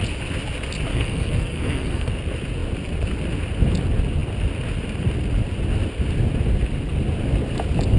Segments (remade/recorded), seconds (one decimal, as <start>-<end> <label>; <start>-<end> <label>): 0.0-0.9 recorded; 0.9-2.1 remade; 2.1-8.0 recorded

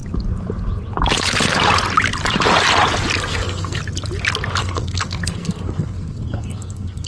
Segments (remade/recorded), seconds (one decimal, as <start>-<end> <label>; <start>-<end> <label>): 0.0-3.3 recorded; 3.3-3.8 remade; 3.8-4.6 recorded; 4.6-7.1 remade

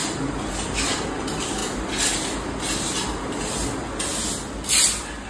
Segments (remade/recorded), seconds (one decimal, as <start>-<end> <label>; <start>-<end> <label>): 0.0-5.3 recorded